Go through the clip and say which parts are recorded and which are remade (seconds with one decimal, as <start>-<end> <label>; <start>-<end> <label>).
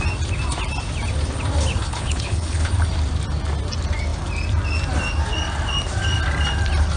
0.0-1.7 recorded; 1.7-2.7 remade; 2.7-7.0 recorded